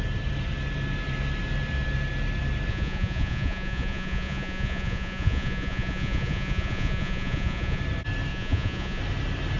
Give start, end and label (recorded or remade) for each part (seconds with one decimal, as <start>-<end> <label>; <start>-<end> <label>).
0.0-2.7 recorded; 2.7-7.8 remade; 7.8-8.3 recorded; 8.3-9.0 remade; 9.0-9.6 recorded

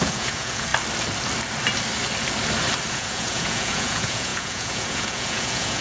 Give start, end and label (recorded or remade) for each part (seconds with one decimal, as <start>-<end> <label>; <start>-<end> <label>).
0.0-0.7 remade; 0.7-2.9 recorded; 2.9-5.8 remade

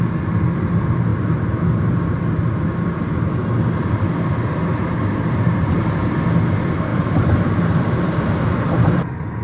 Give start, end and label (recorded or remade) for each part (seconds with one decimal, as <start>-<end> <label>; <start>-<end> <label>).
0.0-4.7 recorded; 4.7-5.8 remade; 5.8-6.9 recorded; 6.9-8.2 remade; 8.2-9.4 recorded

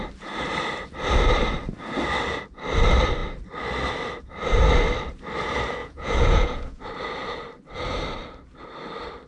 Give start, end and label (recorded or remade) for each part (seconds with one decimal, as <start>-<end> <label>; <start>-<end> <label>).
0.0-5.8 recorded; 5.8-6.8 remade; 6.8-9.3 recorded

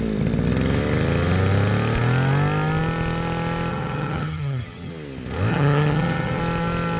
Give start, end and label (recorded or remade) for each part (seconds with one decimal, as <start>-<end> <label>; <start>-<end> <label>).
0.0-3.7 recorded; 3.7-4.9 remade; 4.9-5.5 recorded; 5.5-6.4 remade; 6.4-7.0 recorded

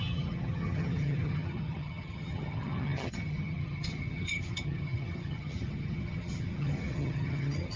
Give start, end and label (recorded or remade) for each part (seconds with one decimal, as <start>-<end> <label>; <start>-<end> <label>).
0.0-7.8 remade

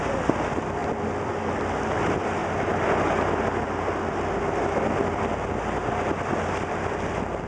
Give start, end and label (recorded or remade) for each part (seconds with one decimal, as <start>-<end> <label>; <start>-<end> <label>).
0.0-7.5 recorded

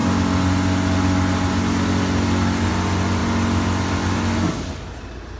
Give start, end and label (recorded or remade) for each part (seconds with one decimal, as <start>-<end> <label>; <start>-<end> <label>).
0.0-5.4 recorded